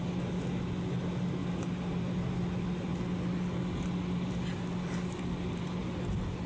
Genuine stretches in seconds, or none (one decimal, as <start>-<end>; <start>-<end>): 0.0-6.5